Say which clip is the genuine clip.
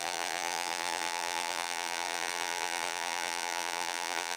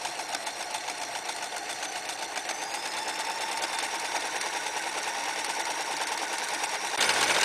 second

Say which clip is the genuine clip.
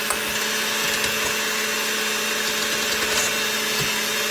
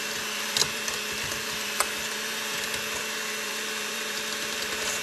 first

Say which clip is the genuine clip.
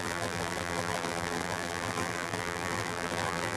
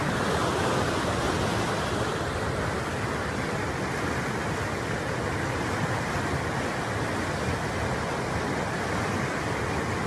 second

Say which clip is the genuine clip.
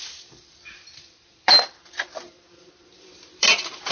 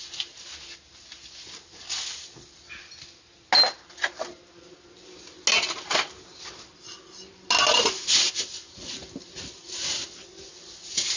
second